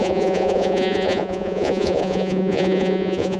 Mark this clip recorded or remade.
remade